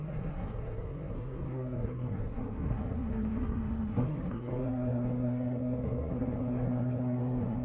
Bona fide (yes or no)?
no